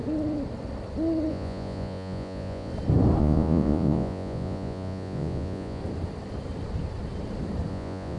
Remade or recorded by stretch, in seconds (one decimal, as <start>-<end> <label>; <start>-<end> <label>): 0.0-1.3 recorded; 1.3-2.7 remade; 2.7-3.2 recorded; 3.2-5.8 remade; 5.8-7.7 recorded; 7.7-8.2 remade